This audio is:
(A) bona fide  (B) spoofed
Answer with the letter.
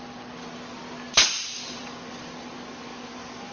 A